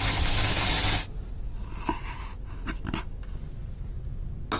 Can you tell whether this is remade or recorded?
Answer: recorded